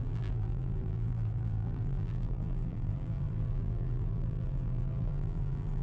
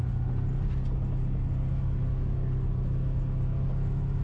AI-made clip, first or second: first